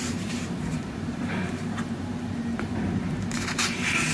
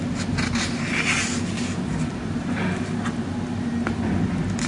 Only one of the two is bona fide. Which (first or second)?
second